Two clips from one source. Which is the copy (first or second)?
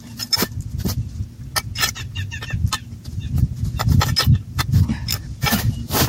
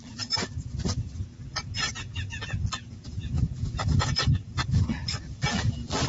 second